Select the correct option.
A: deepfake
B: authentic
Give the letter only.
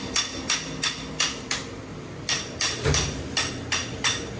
B